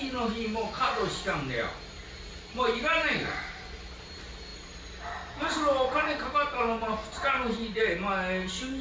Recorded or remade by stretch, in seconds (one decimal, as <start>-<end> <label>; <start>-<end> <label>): 0.0-8.8 recorded